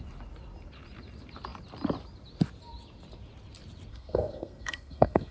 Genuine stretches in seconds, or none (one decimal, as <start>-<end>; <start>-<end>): 0.0-3.9

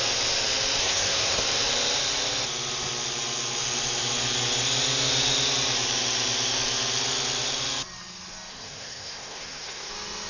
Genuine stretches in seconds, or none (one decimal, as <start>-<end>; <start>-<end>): 0.0-0.8; 1.4-8.5; 9.9-10.3